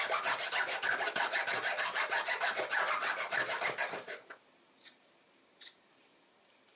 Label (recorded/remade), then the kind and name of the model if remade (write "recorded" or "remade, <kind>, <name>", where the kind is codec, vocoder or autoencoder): recorded